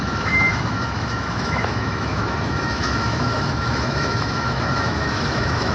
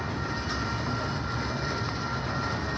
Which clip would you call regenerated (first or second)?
first